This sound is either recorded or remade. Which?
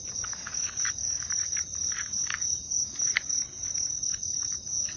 recorded